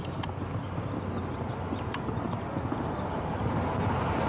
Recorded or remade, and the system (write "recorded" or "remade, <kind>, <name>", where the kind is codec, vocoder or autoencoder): recorded